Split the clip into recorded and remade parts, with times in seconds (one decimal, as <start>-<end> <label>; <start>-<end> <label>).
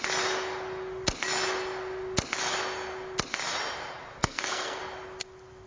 0.0-4.2 recorded; 4.2-4.8 remade; 4.8-5.7 recorded